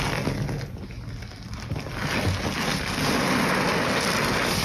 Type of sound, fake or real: real